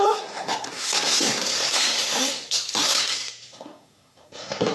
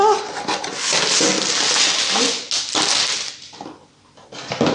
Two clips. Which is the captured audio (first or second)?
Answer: second